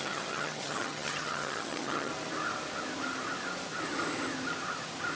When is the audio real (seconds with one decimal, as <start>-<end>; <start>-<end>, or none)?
2.1-5.2